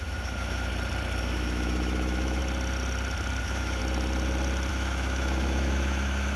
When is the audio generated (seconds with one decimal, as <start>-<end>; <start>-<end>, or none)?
0.0-0.7; 1.2-2.4; 3.4-3.8; 4.7-6.4